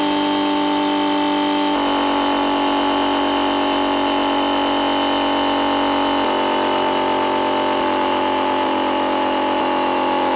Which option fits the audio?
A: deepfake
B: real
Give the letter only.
B